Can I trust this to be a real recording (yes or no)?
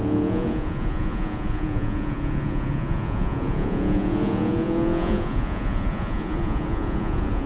no